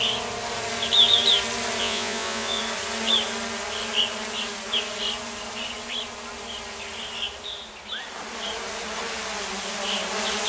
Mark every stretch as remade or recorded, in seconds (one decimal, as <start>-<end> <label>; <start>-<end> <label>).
0.0-1.8 recorded; 1.8-2.6 remade; 2.6-10.5 recorded